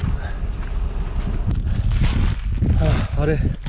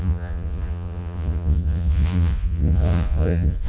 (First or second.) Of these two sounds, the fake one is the second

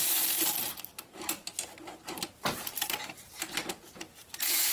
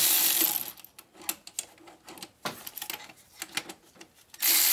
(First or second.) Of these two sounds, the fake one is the first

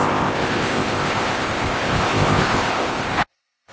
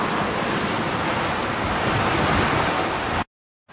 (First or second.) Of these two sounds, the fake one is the first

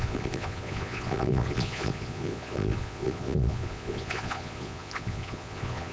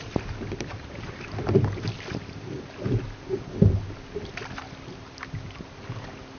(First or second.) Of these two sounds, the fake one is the first